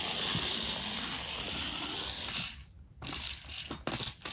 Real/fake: real